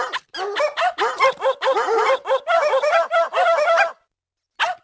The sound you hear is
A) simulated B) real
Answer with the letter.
B